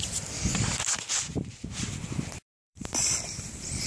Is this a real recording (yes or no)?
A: no